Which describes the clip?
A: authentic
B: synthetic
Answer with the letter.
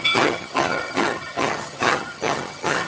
B